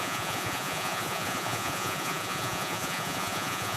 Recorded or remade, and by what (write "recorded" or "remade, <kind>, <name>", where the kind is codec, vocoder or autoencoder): remade, vocoder, Vocos